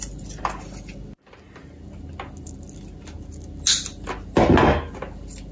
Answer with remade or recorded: recorded